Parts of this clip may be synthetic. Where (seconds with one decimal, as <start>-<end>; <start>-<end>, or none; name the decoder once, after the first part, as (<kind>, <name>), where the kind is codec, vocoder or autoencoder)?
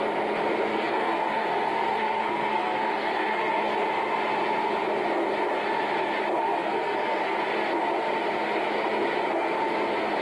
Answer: 0.7-3.8 (codec, SNAC); 6.4-7.4